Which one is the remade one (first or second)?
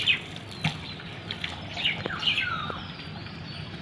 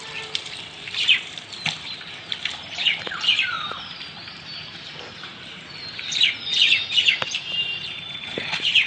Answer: second